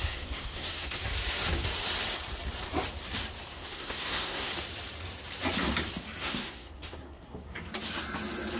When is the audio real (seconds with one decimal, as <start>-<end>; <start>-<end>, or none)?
1.0-3.5; 4.5-6.2; 7.7-8.6